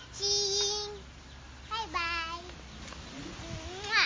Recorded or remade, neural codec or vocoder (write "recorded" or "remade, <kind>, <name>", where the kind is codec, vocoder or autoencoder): recorded